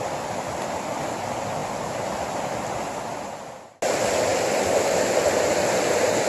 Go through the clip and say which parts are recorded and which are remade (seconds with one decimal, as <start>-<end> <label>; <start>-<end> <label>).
0.0-6.3 recorded